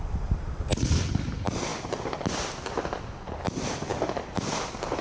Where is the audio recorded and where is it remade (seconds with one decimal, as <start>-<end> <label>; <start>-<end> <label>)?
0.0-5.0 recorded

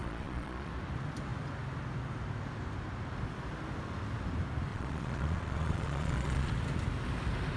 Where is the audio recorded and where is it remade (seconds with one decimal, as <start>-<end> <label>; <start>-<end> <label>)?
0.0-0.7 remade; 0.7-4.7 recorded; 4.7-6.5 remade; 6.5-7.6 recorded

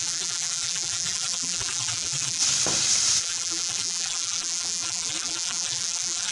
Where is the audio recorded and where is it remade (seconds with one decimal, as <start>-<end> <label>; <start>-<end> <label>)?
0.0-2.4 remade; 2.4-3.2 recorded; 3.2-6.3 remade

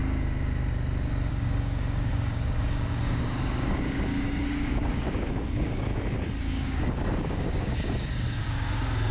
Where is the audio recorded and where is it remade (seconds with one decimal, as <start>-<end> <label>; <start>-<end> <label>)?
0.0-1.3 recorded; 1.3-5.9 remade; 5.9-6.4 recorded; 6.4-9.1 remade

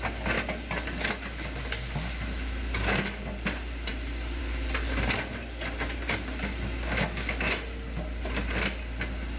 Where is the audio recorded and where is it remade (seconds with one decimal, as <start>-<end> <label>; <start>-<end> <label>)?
0.0-9.4 recorded

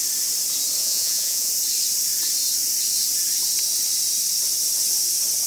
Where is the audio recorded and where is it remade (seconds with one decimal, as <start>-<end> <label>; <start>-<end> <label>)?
0.0-0.8 recorded; 0.8-1.5 remade; 1.5-5.5 recorded

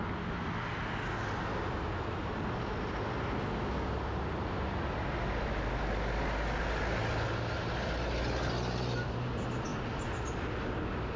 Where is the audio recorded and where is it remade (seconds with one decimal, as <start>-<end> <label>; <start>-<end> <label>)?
0.0-11.2 recorded

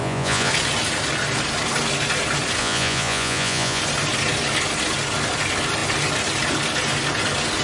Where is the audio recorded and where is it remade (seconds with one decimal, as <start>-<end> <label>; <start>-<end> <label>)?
0.0-0.5 remade; 0.5-2.6 recorded; 2.6-3.8 remade; 3.8-7.6 recorded